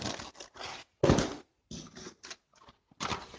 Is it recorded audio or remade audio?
recorded